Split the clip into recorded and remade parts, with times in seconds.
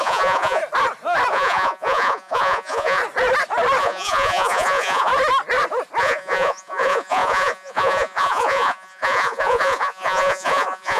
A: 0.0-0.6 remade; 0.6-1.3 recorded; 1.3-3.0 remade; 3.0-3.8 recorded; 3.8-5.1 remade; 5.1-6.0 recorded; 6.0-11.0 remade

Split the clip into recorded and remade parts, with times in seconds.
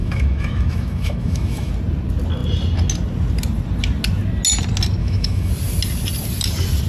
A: 0.0-1.7 remade; 1.7-5.0 recorded; 5.0-5.5 remade; 5.5-6.9 recorded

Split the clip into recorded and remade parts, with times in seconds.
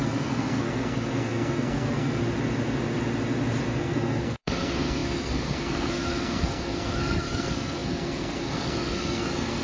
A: 0.0-2.2 remade; 2.2-3.8 recorded; 3.8-9.6 remade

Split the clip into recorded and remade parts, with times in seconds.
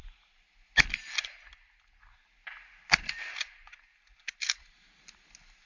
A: 0.0-5.7 recorded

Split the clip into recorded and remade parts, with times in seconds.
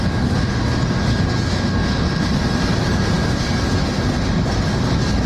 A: 0.0-2.7 recorded; 2.7-3.4 remade; 3.4-5.3 recorded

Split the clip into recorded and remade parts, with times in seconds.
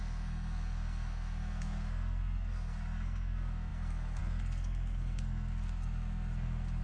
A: 0.0-6.8 remade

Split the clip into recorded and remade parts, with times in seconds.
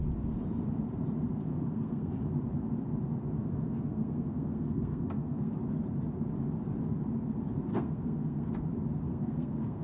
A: 0.0-1.5 recorded; 1.5-2.1 remade; 2.1-3.4 recorded; 3.4-5.5 remade; 5.5-7.7 recorded; 7.7-8.5 remade; 8.5-9.1 recorded; 9.1-9.8 remade